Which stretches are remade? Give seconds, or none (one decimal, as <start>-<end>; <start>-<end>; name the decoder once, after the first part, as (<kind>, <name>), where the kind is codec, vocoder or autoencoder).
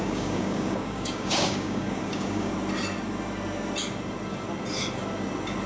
0.0-2.5 (codec, DAC)